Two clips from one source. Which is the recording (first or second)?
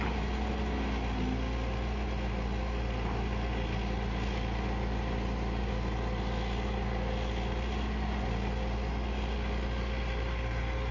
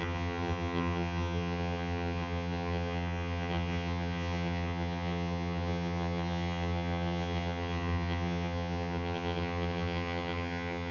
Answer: first